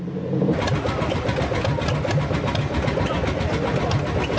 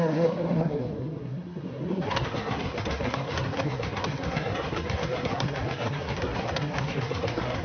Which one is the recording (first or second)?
first